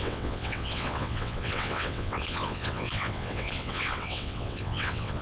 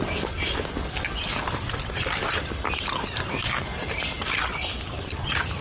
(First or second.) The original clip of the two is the second